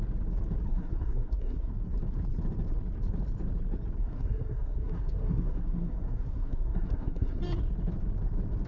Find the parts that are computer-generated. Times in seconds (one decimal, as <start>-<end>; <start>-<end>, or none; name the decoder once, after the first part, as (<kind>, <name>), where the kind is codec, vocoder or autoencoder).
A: 0.7-1.7 (codec, SNAC); 4.0-7.4